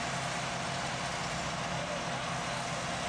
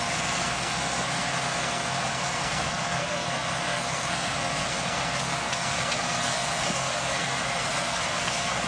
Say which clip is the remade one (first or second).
second